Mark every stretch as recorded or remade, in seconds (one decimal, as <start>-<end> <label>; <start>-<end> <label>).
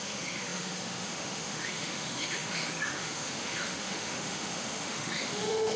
0.0-5.8 remade